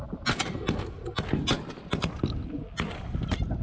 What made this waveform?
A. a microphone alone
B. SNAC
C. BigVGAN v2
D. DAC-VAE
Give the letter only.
A